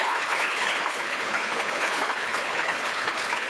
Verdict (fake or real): fake